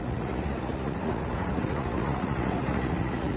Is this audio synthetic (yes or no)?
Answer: yes